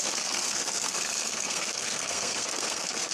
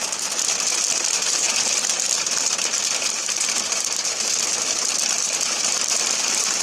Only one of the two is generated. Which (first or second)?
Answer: first